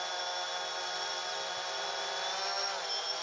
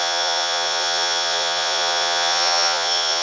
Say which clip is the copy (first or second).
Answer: second